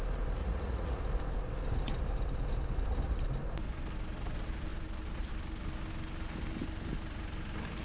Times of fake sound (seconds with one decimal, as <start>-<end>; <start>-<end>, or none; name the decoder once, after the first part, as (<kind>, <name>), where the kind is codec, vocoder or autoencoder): 0.4-1.0 (vocoder, Vocos)